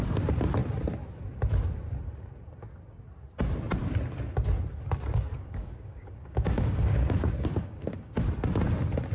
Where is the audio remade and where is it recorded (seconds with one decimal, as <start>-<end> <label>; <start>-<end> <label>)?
0.0-5.3 recorded; 5.3-8.3 remade; 8.3-9.1 recorded